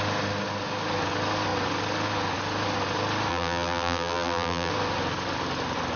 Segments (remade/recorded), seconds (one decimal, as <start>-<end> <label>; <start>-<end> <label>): 0.0-3.3 recorded; 3.3-4.7 remade; 4.7-6.0 recorded